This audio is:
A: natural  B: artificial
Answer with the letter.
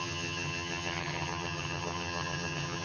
B